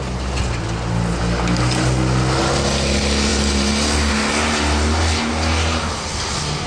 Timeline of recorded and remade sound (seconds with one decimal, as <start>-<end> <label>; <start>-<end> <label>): 0.0-6.7 recorded